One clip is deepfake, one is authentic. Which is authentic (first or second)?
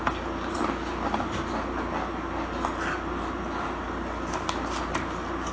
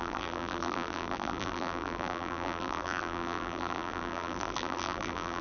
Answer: first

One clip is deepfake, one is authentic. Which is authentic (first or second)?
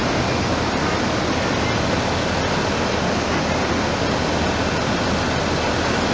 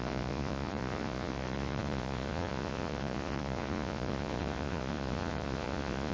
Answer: first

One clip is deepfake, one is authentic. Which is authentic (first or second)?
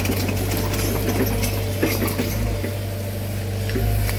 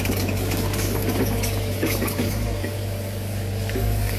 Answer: first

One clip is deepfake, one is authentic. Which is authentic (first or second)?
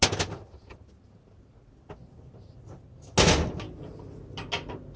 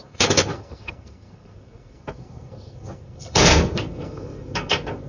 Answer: first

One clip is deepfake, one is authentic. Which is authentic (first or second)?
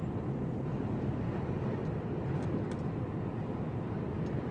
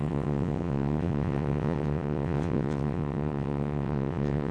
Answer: first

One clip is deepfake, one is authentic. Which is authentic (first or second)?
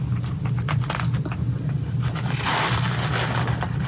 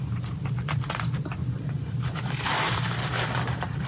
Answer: first